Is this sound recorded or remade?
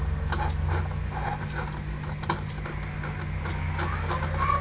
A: recorded